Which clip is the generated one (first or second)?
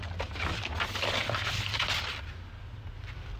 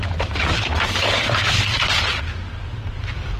second